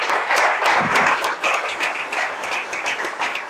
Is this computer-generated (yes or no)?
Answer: yes